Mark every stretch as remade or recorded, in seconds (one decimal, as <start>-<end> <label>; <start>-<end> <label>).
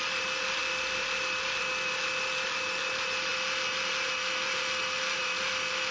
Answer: 0.0-5.9 recorded